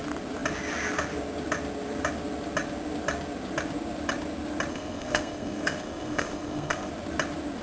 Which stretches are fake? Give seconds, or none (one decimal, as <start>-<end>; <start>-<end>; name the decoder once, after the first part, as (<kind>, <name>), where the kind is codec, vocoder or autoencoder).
4.7-6.9 (codec, SNAC)